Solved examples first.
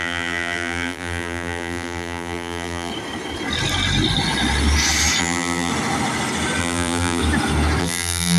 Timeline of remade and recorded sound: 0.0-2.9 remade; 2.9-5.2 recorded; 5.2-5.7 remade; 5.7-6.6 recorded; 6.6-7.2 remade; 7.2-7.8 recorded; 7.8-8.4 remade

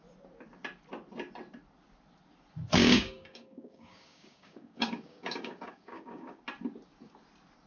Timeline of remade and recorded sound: 0.0-2.7 recorded; 2.7-6.4 remade; 6.4-7.7 recorded

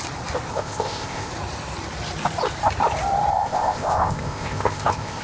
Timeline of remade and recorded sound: 0.0-0.5 recorded; 0.5-1.3 remade; 1.3-3.3 recorded; 3.3-5.2 remade

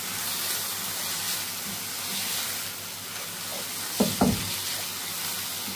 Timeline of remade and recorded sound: 0.0-5.8 recorded

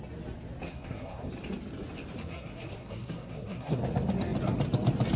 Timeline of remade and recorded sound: 0.0-0.7 recorded; 0.7-1.3 remade; 1.3-2.2 recorded; 2.2-3.8 remade; 3.8-5.2 recorded

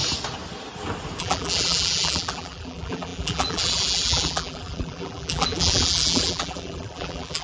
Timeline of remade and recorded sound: 0.0-1.2 recorded; 1.2-7.4 remade

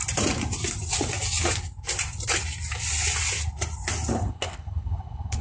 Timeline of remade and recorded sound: 0.0-4.1 recorded; 4.1-5.4 remade

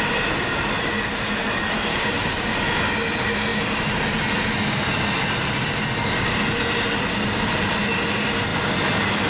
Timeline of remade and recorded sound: 0.0-1.9 recorded; 1.9-2.5 remade; 2.5-9.3 recorded